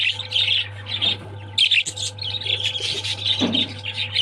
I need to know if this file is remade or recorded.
recorded